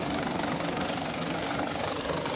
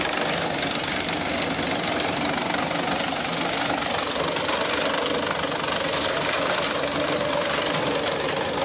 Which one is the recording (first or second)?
second